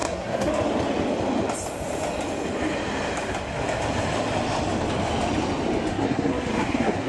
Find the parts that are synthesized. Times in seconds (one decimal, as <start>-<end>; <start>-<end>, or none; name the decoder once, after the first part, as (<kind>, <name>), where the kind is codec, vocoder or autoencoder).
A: 0.0-0.5 (codec, SNAC); 5.9-7.1